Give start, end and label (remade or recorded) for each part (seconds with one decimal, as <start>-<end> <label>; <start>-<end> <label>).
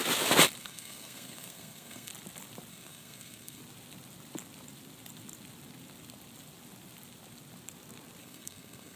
0.0-0.6 recorded; 0.6-2.1 remade; 2.1-2.7 recorded; 2.7-3.6 remade; 3.6-8.2 recorded; 8.2-9.0 remade